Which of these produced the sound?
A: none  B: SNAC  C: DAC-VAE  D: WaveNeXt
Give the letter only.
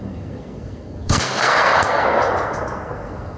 B